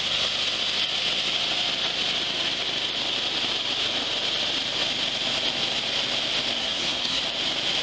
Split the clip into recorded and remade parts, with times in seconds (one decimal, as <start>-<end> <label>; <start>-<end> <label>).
0.0-6.6 recorded; 6.6-7.2 remade; 7.2-7.8 recorded